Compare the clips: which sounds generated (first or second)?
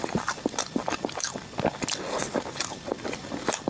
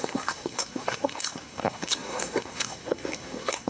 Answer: second